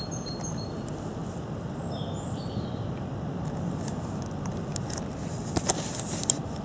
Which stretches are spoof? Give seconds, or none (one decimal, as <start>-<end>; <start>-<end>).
none